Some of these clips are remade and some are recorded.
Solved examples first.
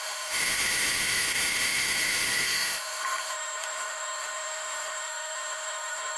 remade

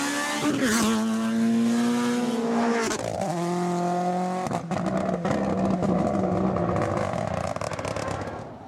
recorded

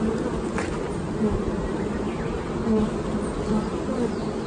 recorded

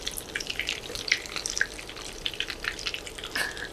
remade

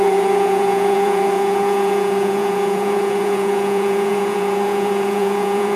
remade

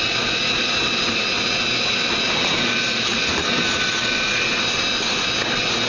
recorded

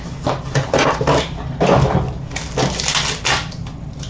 recorded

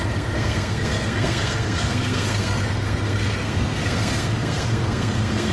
remade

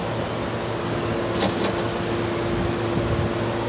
recorded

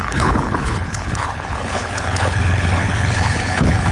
remade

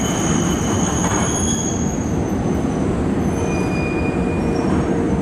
recorded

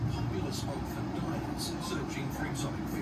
recorded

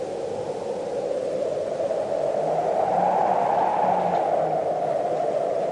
recorded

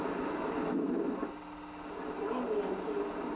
recorded